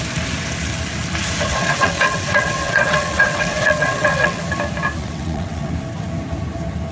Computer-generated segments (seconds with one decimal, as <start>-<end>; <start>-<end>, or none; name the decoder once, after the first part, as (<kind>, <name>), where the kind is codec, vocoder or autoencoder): 1.5-4.4 (vocoder, WaveNeXt); 5.0-5.7